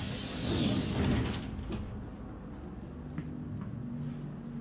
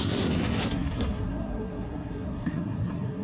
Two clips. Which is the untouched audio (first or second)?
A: first